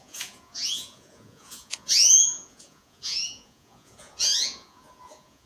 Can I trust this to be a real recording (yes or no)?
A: no